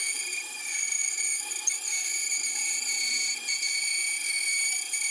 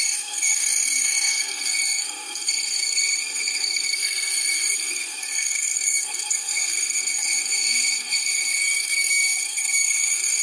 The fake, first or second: second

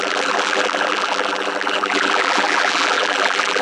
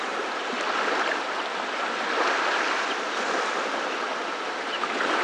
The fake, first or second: first